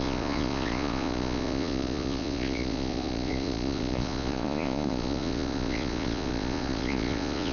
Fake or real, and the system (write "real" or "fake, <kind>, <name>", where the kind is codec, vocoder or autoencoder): fake, vocoder, Vocos